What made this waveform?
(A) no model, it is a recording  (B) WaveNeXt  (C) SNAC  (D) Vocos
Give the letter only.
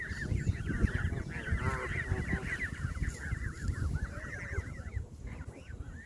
A